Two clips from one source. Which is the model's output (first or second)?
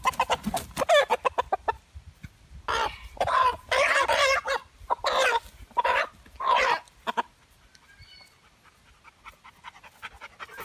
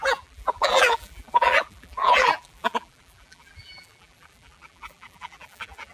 second